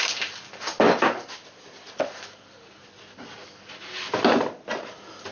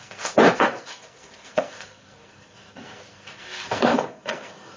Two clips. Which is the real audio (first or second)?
first